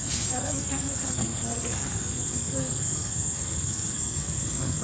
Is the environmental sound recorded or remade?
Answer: remade